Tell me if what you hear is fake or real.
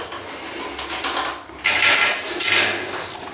real